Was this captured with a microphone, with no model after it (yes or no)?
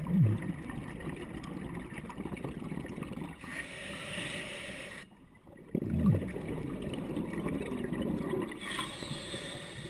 yes